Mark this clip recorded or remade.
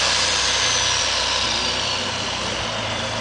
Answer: recorded